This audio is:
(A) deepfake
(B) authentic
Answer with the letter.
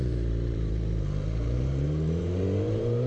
A